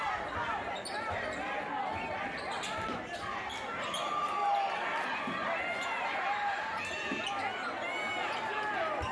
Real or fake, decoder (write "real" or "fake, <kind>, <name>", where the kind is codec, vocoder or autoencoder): real